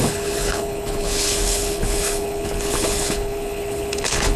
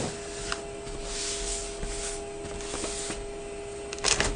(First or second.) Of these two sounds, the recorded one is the second